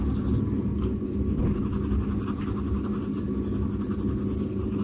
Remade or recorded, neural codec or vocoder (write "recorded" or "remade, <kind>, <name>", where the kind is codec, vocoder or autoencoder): recorded